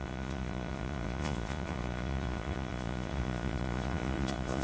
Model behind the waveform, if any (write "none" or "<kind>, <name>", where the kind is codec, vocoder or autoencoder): vocoder, Vocos